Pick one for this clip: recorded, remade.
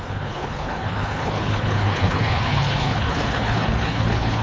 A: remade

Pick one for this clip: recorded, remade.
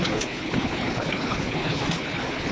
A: remade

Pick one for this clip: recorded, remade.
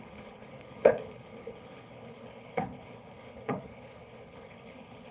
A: remade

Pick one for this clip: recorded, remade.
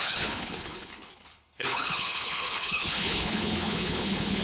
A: remade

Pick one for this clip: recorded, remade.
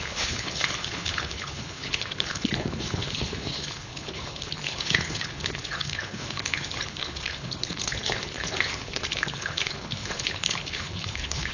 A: remade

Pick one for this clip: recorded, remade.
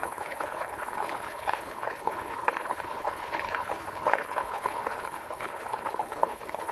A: remade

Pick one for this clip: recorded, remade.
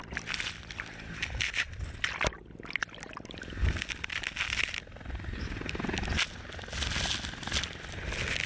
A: recorded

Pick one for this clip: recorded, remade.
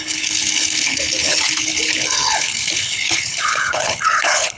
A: remade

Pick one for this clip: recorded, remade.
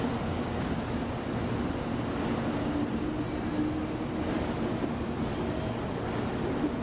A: recorded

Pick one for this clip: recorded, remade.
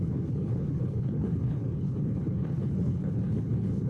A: remade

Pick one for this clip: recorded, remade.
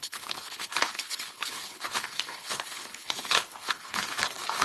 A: remade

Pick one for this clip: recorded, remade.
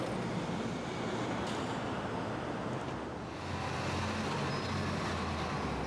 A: recorded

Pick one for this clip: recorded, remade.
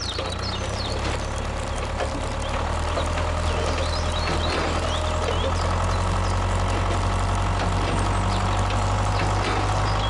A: recorded